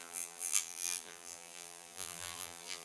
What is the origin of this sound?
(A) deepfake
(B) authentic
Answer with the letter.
A